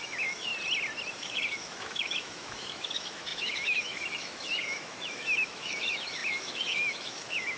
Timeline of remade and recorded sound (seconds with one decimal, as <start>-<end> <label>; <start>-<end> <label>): 0.0-0.5 remade; 0.5-1.1 recorded; 1.1-7.6 remade